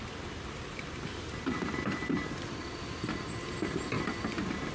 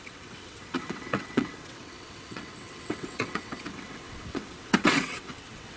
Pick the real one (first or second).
first